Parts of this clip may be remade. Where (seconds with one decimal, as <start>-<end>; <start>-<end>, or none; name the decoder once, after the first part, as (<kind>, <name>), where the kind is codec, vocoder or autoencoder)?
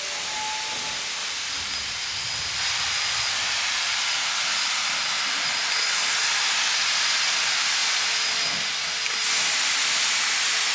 1.2-6.1 (vocoder, BigVGAN v2)